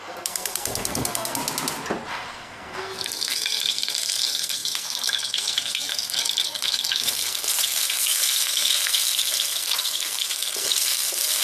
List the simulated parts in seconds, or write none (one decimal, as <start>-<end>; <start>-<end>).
0.0-1.4; 2.1-11.4